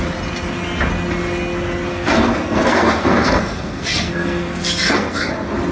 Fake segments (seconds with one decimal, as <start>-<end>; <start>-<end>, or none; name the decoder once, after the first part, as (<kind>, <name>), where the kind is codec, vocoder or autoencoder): 1.9-5.3 (codec, SNAC)